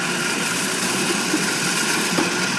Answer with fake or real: real